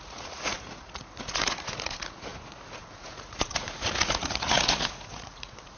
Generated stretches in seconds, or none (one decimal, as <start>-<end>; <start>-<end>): 0.0-5.8